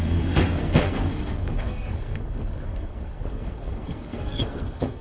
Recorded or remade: remade